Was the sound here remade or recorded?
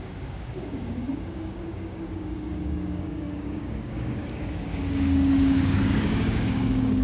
remade